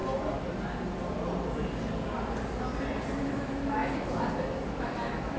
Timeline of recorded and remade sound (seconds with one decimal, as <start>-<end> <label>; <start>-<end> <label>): 0.0-3.2 recorded; 3.2-5.4 remade

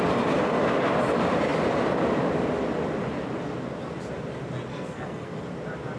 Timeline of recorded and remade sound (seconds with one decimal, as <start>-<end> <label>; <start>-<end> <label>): 0.0-4.7 recorded; 4.7-5.4 remade; 5.4-6.0 recorded

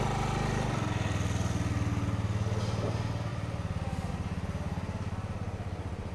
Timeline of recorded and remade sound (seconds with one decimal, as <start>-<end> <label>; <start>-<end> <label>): 0.0-3.3 recorded; 3.3-4.1 remade; 4.1-6.1 recorded

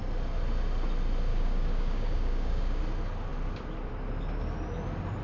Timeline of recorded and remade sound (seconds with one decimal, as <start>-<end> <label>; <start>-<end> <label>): 0.0-1.3 recorded; 1.3-2.8 remade; 2.8-5.2 recorded

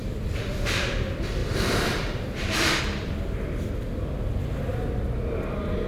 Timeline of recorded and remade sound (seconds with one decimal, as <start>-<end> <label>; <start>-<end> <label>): 0.0-0.9 remade; 0.9-1.4 recorded; 1.4-2.8 remade; 2.8-5.9 recorded

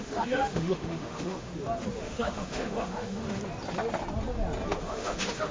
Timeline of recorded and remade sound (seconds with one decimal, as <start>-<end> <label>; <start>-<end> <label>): 0.0-1.5 remade; 1.5-2.0 recorded; 2.0-3.4 remade; 3.4-4.8 recorded; 4.8-5.5 remade

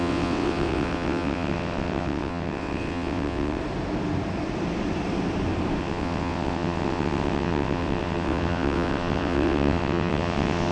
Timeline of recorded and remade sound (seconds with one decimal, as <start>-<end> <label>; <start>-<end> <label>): 0.0-3.6 remade; 3.6-5.8 recorded; 5.8-10.7 remade

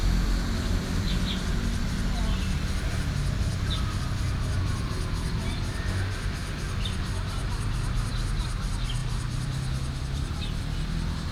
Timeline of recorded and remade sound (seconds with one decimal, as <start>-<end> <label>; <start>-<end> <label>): 0.0-1.8 remade; 1.8-11.3 recorded